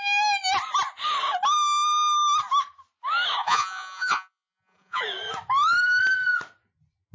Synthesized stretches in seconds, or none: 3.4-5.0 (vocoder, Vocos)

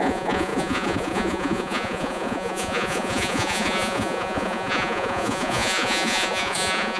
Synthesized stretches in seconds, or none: 0.0-7.0 (vocoder, Vocos)